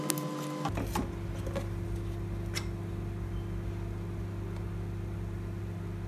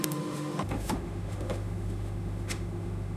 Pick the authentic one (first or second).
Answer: first